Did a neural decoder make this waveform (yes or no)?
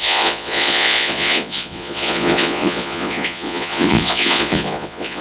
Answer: yes